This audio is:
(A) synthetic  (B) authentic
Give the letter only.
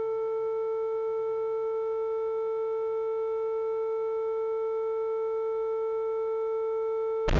B